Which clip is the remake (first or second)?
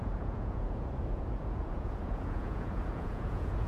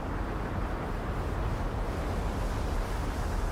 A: first